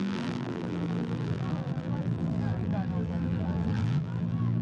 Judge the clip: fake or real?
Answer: fake